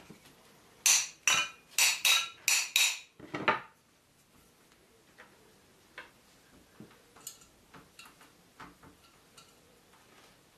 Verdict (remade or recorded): recorded